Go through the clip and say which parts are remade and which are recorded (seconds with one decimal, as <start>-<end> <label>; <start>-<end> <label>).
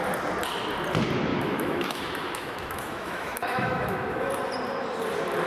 0.0-1.3 recorded; 1.3-4.3 remade; 4.3-5.5 recorded